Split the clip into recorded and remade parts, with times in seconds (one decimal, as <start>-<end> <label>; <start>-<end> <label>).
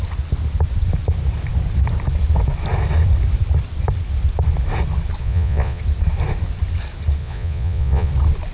0.0-5.2 recorded; 5.2-5.8 remade; 5.8-7.2 recorded; 7.2-8.1 remade; 8.1-8.5 recorded